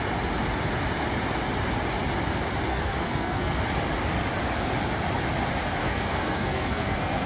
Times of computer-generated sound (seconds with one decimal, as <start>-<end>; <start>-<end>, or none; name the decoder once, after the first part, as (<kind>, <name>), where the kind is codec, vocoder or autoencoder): 2.7-3.6 (codec, SNAC); 5.8-7.3